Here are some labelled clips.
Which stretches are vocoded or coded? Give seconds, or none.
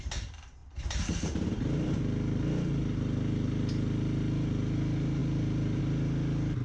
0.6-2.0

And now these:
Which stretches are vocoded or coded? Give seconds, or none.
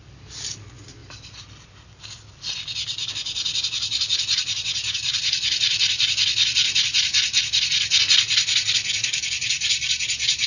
none